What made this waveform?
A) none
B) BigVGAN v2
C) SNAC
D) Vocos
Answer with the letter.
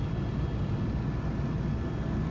A